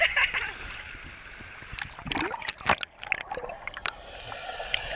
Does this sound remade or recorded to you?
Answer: recorded